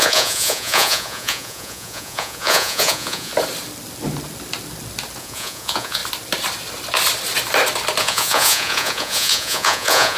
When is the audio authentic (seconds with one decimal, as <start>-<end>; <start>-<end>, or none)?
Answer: 3.3-5.2; 6.0-8.0